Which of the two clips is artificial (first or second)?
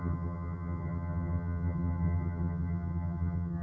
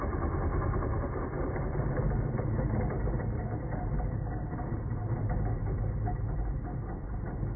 first